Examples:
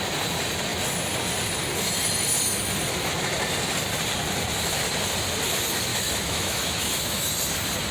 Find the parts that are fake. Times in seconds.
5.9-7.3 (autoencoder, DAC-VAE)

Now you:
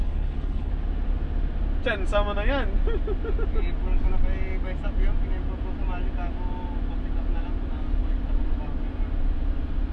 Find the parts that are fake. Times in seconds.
0.0-0.7 (codec, HILCodec)

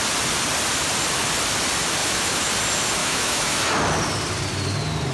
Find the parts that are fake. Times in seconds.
2.0-2.5 (autoencoder, DAC-VAE); 3.0-3.6

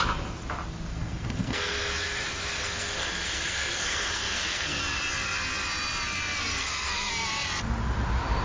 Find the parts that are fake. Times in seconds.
0.9-4.8 (codec, SNAC); 6.5-7.1

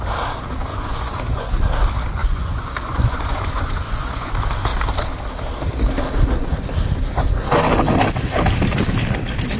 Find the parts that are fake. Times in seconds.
0.7-1.5 (vocoder, Vocos); 2.2-4.3